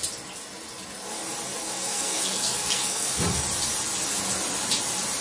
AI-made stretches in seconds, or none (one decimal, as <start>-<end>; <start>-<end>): 1.6-3.2